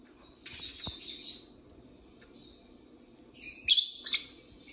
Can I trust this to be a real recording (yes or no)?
yes